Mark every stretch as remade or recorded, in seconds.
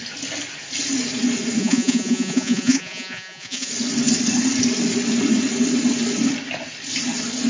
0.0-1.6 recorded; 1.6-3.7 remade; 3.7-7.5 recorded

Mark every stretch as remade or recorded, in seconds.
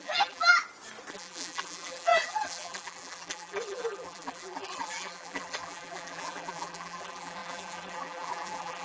0.0-0.6 remade; 0.6-1.1 recorded; 1.1-8.8 remade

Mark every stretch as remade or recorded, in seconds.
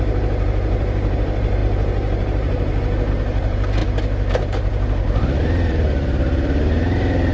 0.0-3.8 remade; 3.8-4.3 recorded; 4.3-4.7 remade; 4.7-5.4 recorded; 5.4-7.3 remade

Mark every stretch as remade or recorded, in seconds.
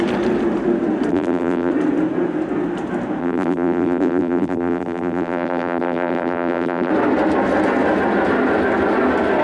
0.0-1.1 recorded; 1.1-1.7 remade; 1.7-3.2 recorded; 3.2-6.9 remade; 6.9-9.4 recorded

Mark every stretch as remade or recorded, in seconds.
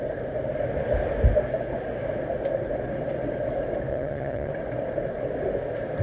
0.0-3.9 recorded; 3.9-4.5 remade; 4.5-6.0 recorded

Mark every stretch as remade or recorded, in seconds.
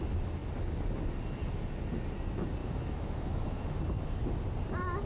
0.0-2.6 recorded; 2.6-3.8 remade; 3.8-5.1 recorded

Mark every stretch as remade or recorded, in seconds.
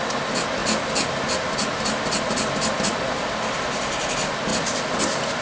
0.0-5.4 recorded